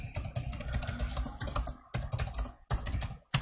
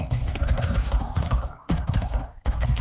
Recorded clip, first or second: first